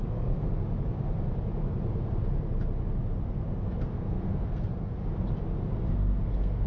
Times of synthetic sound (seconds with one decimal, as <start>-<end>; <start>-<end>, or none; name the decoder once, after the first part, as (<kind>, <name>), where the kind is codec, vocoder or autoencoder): 0.0-0.4 (codec, SNAC); 3.8-5.0; 5.9-6.7